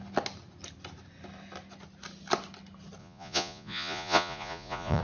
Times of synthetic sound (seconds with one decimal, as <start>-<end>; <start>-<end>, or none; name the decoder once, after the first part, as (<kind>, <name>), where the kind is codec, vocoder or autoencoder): 3.0-5.0 (vocoder, Vocos)